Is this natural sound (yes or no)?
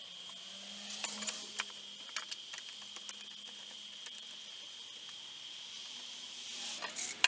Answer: yes